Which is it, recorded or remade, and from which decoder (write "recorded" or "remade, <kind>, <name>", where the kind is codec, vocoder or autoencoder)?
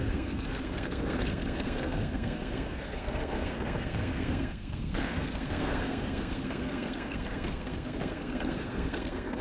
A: remade, codec, SNAC